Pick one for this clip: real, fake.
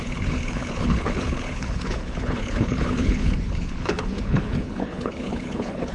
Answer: fake